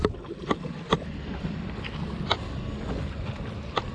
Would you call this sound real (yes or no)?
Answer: yes